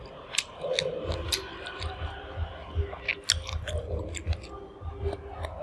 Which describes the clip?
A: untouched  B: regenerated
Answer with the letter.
A